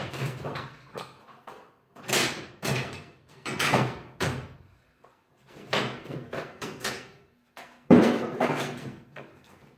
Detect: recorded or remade remade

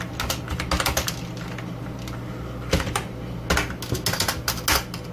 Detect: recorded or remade recorded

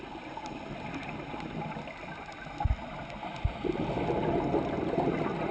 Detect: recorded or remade recorded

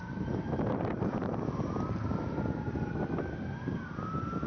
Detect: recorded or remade recorded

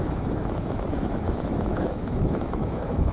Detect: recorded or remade remade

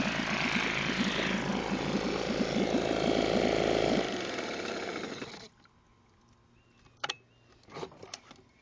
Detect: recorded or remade recorded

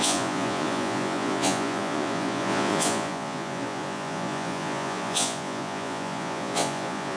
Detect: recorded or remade remade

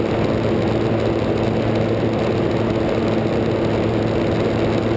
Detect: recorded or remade recorded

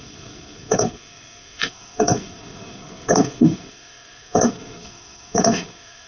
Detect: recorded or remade remade